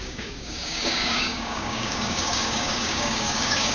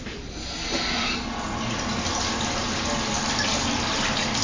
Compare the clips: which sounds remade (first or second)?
first